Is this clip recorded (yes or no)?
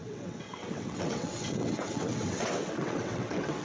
no